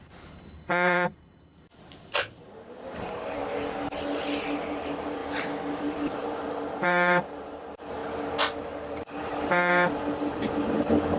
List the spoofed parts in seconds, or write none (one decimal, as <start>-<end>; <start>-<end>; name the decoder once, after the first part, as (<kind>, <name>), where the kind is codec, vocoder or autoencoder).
0.0-3.4 (vocoder, BigVGAN v2); 4.7-5.2; 5.8-8.0; 8.6-11.2